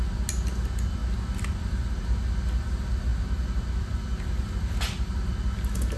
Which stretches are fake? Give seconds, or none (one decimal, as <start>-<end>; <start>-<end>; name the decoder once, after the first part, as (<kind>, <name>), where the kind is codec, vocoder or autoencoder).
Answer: none